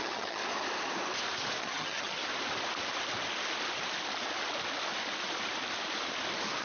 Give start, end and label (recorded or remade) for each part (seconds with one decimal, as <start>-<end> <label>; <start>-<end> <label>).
0.0-0.4 remade; 0.4-1.6 recorded; 1.6-2.2 remade; 2.2-6.6 recorded